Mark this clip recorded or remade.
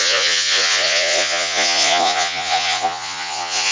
remade